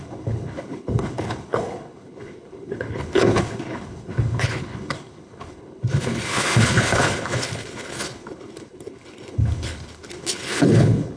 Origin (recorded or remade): remade